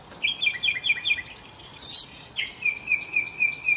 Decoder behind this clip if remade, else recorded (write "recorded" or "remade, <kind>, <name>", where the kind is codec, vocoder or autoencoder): recorded